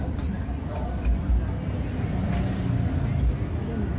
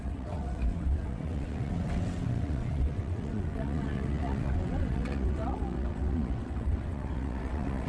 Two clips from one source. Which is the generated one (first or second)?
second